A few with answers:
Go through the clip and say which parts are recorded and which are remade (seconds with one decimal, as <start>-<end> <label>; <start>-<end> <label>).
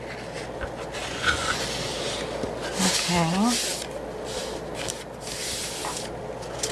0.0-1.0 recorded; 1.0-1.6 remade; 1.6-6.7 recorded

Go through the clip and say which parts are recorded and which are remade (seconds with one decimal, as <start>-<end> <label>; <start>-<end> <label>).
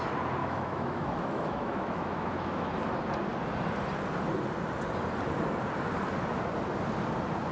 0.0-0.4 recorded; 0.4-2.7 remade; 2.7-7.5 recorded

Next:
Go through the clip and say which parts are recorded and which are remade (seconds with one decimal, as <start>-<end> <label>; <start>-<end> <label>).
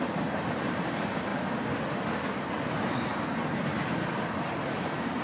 0.0-1.3 remade; 1.3-2.4 recorded; 2.4-3.1 remade; 3.1-4.6 recorded; 4.6-5.2 remade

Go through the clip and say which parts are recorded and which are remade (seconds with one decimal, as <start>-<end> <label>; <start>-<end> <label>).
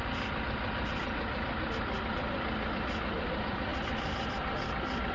0.0-5.1 recorded